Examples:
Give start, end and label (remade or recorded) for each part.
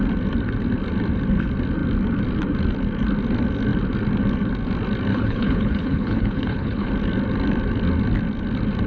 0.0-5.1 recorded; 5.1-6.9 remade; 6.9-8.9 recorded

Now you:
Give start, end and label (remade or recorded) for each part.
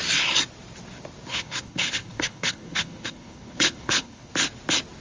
0.0-1.3 recorded; 1.3-4.3 remade; 4.3-5.0 recorded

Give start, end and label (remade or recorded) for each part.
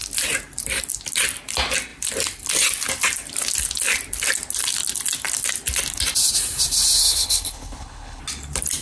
0.0-7.0 recorded; 7.0-8.2 remade; 8.2-8.8 recorded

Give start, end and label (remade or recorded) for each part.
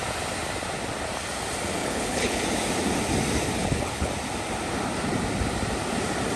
0.0-1.8 recorded; 1.8-2.4 remade; 2.4-3.6 recorded; 3.6-4.1 remade; 4.1-6.4 recorded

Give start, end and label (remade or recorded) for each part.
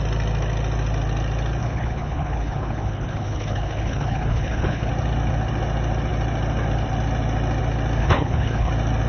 0.0-1.6 recorded; 1.6-4.9 remade; 4.9-8.0 recorded; 8.0-8.7 remade; 8.7-9.1 recorded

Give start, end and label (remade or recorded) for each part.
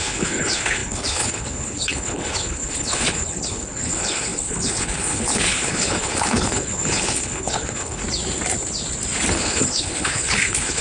0.0-8.0 remade; 8.0-9.3 recorded; 9.3-10.8 remade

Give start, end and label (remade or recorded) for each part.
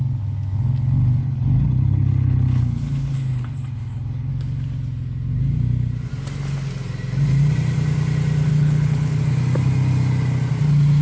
0.0-1.2 recorded; 1.2-4.3 remade; 4.3-8.5 recorded; 8.5-9.2 remade; 9.2-11.0 recorded